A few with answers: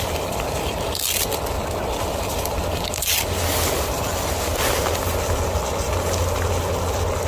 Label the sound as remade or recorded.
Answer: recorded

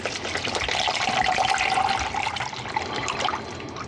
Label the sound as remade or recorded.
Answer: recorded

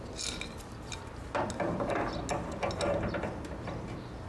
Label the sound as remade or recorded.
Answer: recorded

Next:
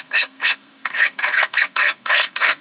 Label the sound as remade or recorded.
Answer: remade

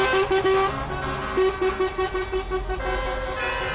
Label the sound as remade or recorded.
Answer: recorded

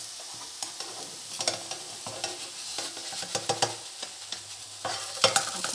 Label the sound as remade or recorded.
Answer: recorded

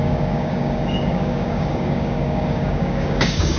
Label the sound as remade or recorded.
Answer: remade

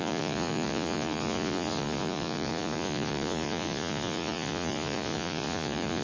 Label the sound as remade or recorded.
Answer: remade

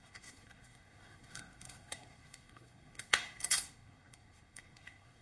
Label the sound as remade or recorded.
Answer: remade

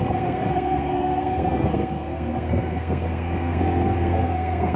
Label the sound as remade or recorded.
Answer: remade